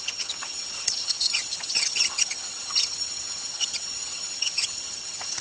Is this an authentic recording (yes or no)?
no